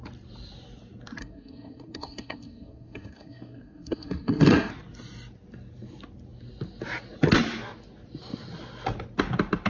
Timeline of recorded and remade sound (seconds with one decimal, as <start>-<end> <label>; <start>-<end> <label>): 0.0-1.2 recorded; 1.2-4.7 remade; 4.7-9.7 recorded